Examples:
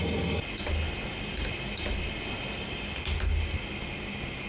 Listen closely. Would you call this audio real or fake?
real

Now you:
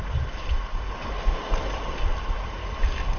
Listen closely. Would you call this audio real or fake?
real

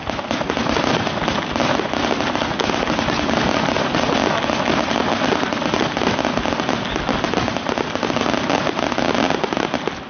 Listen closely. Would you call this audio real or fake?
real